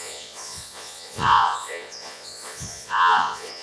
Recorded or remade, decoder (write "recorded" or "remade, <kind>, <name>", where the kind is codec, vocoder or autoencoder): remade, vocoder, Vocos